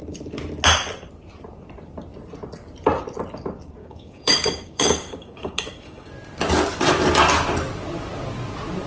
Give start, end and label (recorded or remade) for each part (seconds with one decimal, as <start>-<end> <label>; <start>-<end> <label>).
0.0-3.8 recorded; 3.8-6.1 remade; 6.1-8.9 recorded